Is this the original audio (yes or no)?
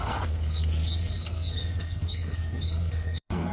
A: no